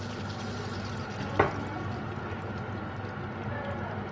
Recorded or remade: recorded